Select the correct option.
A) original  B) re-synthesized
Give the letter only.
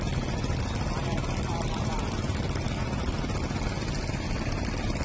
A